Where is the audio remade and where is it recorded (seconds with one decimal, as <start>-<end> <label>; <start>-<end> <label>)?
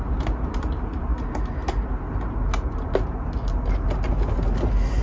0.0-5.0 recorded